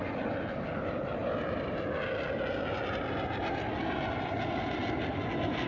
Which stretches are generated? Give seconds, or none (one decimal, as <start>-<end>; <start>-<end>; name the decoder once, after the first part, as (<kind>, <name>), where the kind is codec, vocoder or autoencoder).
none